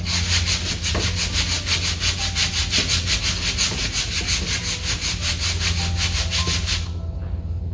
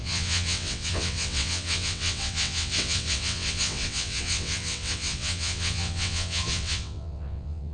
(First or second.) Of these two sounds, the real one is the first